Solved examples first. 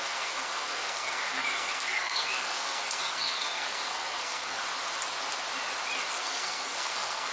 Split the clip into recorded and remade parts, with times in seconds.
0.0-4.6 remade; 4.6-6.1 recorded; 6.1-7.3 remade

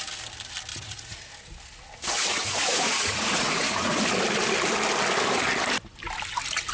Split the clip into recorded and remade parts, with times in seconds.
0.0-0.7 recorded; 0.7-1.3 remade; 1.3-2.3 recorded; 2.3-4.0 remade; 4.0-6.7 recorded

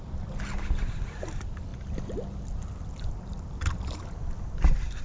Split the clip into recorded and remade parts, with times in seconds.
0.0-5.0 recorded

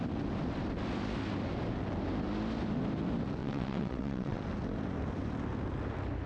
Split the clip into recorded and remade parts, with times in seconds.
0.0-3.4 recorded; 3.4-4.4 remade; 4.4-6.3 recorded

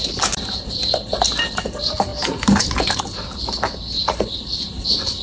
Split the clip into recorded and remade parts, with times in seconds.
0.0-0.8 remade; 0.8-1.4 recorded; 1.4-2.1 remade; 2.1-2.6 recorded; 2.6-5.2 remade

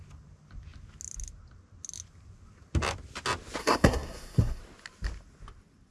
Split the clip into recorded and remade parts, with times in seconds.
0.0-3.6 recorded; 3.6-4.6 remade; 4.6-5.9 recorded

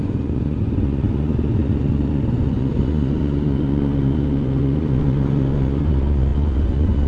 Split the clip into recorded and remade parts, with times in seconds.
0.0-7.1 remade

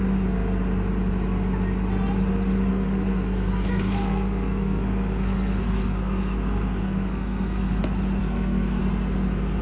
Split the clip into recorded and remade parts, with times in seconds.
0.0-2.7 recorded; 2.7-7.8 remade; 7.8-8.2 recorded; 8.2-8.8 remade; 8.8-9.6 recorded